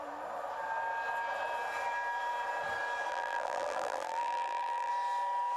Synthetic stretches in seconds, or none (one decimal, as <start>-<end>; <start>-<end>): 3.1-4.9